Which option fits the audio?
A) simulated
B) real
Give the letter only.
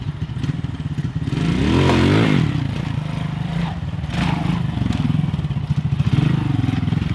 B